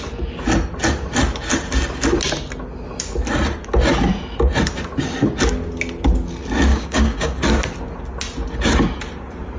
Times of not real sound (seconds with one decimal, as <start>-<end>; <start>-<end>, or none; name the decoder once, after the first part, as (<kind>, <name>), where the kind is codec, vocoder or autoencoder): 6.7-7.4 (codec, DAC)